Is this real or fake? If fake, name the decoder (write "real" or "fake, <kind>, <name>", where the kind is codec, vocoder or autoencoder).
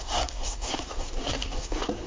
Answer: fake, codec, SNAC